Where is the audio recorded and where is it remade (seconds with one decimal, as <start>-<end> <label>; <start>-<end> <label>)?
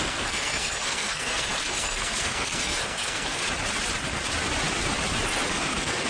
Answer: 0.0-3.4 remade; 3.4-5.5 recorded; 5.5-6.1 remade